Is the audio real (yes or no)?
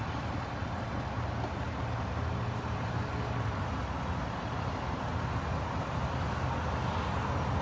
yes